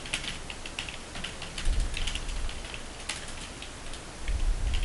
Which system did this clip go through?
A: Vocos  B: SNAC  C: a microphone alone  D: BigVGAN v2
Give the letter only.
C